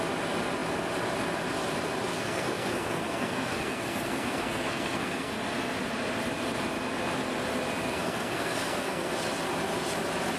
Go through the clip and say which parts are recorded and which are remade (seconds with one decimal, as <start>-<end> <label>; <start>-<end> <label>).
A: 0.0-2.1 recorded; 2.1-5.3 remade; 5.3-7.8 recorded; 7.8-9.1 remade; 9.1-10.4 recorded